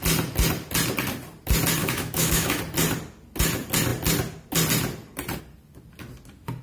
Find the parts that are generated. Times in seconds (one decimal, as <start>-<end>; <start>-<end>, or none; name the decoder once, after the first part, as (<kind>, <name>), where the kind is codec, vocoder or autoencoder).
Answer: 1.8-2.6 (autoencoder, DAC-VAE)